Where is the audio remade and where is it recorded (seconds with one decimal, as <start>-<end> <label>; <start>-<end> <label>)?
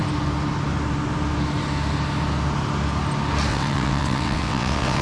0.0-3.5 recorded; 3.5-5.0 remade